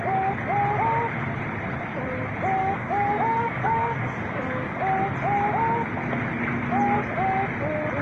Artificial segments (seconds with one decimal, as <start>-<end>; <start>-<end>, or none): 2.6-4.8